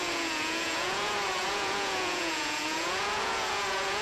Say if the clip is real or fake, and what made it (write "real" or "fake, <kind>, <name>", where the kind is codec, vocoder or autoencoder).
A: fake, vocoder, Vocos